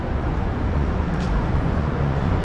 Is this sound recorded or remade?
remade